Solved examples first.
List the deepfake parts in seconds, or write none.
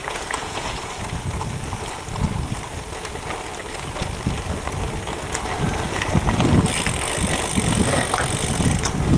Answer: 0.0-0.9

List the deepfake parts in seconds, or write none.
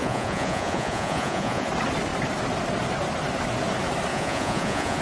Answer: 0.0-1.7; 4.1-5.0